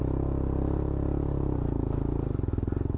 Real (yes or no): yes